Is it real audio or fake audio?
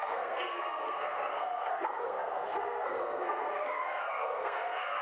fake